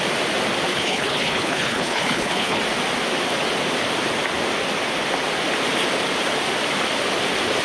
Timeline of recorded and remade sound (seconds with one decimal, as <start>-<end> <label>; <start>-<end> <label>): 0.0-0.7 recorded; 0.7-2.6 remade; 2.6-7.6 recorded